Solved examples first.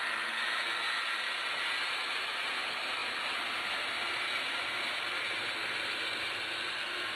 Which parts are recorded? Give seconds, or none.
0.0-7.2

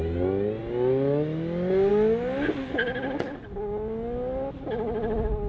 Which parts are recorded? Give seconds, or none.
0.0-5.5